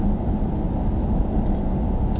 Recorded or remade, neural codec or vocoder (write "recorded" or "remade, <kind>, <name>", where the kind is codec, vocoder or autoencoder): recorded